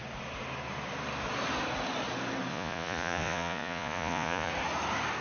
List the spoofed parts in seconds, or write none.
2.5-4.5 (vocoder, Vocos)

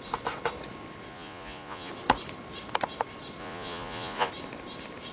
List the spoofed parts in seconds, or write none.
1.1-1.9 (vocoder, Vocos); 3.4-4.3